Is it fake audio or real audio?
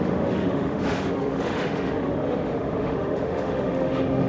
fake